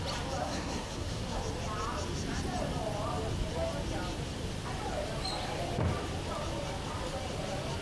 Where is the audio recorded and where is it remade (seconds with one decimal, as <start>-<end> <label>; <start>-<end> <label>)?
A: 0.0-0.4 recorded; 0.4-1.4 remade; 1.4-7.8 recorded